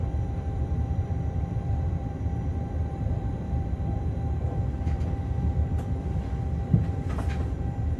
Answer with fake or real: fake